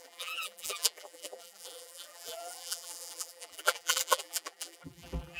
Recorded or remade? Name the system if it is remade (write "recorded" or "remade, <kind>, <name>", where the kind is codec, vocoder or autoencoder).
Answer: remade, vocoder, BigVGAN v2